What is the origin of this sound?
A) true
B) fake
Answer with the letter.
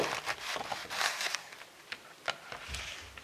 A